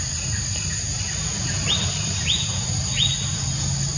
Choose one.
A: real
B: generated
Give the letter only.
A